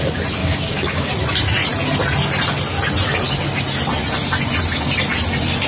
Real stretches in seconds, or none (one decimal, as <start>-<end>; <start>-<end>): 0.0-0.4; 1.1-5.7